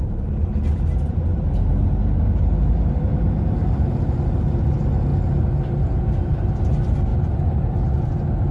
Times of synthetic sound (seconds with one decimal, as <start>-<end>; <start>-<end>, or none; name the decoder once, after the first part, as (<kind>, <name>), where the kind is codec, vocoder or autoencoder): none